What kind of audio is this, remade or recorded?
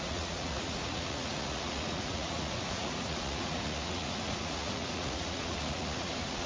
remade